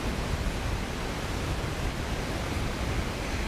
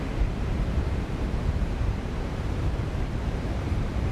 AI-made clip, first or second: second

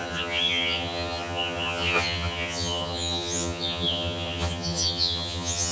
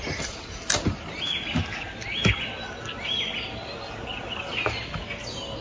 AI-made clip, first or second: first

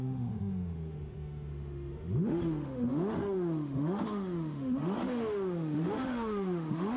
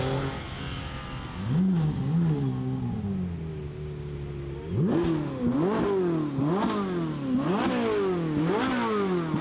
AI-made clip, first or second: first